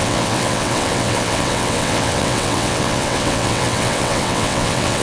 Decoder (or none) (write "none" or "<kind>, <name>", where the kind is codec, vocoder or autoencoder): vocoder, WaveNeXt